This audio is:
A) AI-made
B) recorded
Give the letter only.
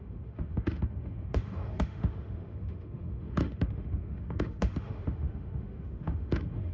A